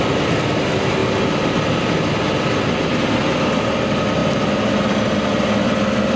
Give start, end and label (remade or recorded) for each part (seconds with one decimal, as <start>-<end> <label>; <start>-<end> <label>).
0.0-6.2 recorded